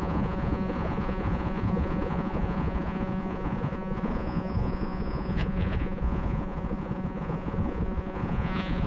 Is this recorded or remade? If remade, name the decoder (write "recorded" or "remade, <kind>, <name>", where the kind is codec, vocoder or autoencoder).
remade, vocoder, Vocos